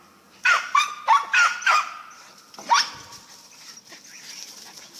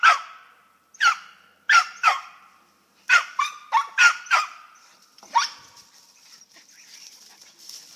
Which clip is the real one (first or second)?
first